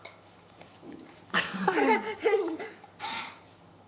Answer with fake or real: fake